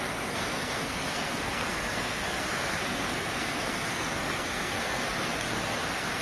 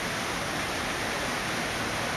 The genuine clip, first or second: second